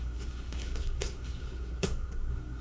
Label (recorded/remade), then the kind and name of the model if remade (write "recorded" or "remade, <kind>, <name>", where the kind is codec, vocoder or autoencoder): remade, codec, SNAC